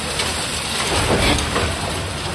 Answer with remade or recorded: recorded